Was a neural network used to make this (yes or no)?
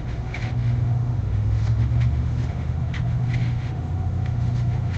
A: yes